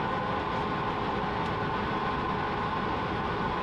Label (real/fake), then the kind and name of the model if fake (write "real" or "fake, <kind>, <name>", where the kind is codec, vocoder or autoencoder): real